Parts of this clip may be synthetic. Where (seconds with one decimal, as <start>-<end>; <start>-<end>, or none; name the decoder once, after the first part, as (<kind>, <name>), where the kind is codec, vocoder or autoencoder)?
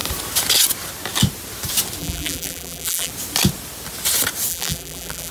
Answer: 2.0-3.1 (vocoder, BigVGAN v2); 4.5-5.3